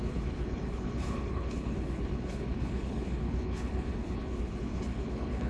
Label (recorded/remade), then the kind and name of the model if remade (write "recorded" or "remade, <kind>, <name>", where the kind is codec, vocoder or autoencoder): remade, codec, HILCodec